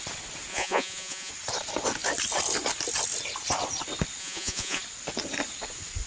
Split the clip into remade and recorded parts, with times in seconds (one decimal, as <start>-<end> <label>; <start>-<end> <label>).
0.0-0.5 recorded; 0.5-1.3 remade; 1.3-4.2 recorded; 4.2-4.8 remade; 4.8-6.1 recorded